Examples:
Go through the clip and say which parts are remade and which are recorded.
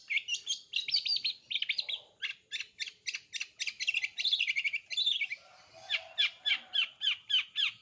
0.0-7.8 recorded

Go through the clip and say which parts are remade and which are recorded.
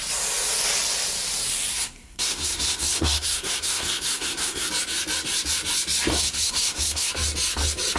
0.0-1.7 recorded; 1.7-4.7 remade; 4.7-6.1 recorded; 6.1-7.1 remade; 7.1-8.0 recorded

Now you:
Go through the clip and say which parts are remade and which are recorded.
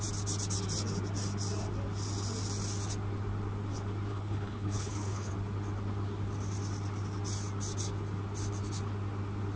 0.0-4.1 recorded; 4.1-5.3 remade; 5.3-9.6 recorded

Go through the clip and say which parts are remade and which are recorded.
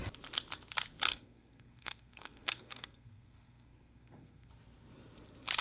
0.0-1.1 recorded; 1.1-4.5 remade; 4.5-5.6 recorded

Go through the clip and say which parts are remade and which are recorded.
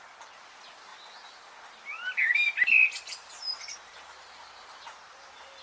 0.0-5.6 recorded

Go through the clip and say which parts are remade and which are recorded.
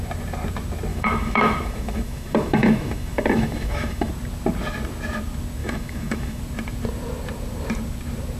0.0-0.9 recorded; 0.9-4.1 remade; 4.1-5.6 recorded; 5.6-6.4 remade; 6.4-8.4 recorded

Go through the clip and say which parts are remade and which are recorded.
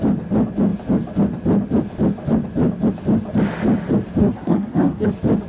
0.0-4.2 recorded; 4.2-5.1 remade; 5.1-5.5 recorded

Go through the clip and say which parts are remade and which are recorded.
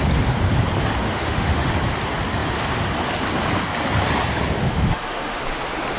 0.0-1.0 recorded; 1.0-1.7 remade; 1.7-4.6 recorded; 4.6-5.4 remade; 5.4-6.0 recorded